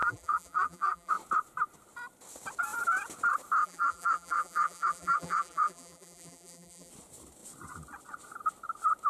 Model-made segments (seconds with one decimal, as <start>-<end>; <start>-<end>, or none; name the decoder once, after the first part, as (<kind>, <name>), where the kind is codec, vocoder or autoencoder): 0.0-1.1 (vocoder, BigVGAN v2); 3.6-6.9